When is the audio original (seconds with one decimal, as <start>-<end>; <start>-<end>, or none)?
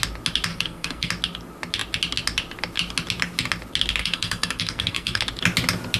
0.0-0.5; 1.1-4.0; 5.2-6.0